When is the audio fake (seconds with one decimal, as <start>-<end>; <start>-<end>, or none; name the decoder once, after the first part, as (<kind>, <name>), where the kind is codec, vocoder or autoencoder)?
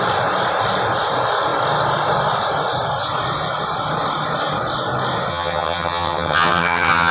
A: 5.3-7.1 (vocoder, HiFi-GAN)